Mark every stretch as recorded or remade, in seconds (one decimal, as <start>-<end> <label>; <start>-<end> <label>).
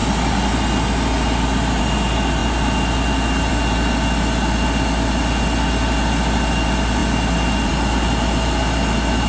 0.0-9.3 recorded